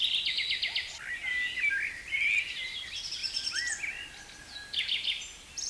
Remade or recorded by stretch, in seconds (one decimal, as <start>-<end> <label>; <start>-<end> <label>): 0.0-5.7 recorded